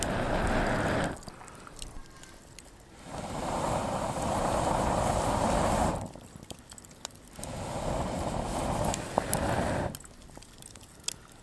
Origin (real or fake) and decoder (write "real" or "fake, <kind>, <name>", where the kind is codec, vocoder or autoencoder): real